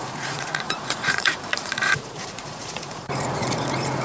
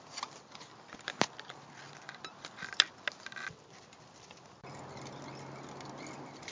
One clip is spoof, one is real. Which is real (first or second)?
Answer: second